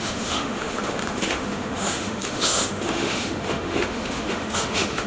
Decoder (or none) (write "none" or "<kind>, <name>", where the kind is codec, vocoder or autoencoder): autoencoder, DAC-VAE